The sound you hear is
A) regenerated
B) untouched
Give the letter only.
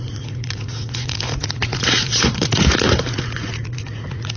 A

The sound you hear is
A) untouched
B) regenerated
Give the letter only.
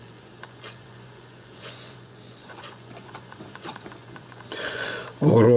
B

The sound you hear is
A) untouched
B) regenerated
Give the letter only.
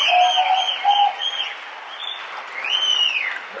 A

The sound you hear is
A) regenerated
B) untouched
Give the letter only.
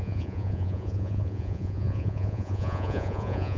A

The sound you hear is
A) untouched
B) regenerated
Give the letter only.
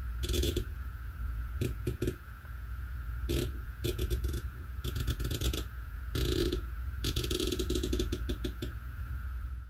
B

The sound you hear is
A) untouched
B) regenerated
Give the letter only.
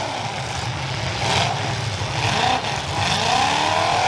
A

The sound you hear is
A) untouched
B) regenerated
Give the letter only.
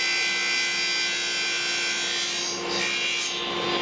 A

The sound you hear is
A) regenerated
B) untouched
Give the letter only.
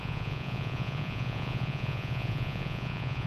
A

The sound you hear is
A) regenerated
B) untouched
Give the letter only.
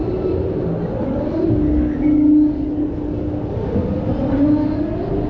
B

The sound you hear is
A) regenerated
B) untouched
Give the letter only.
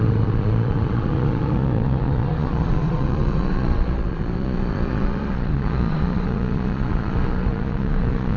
A